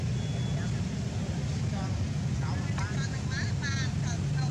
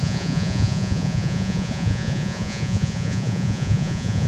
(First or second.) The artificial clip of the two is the second